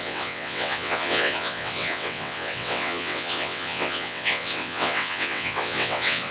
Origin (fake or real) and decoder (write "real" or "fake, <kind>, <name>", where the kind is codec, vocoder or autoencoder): fake, vocoder, WaveNeXt